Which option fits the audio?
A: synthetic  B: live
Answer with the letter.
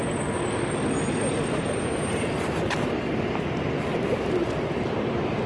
A